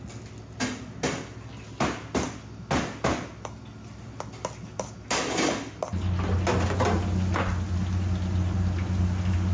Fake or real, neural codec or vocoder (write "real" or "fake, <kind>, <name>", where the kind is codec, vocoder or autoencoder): real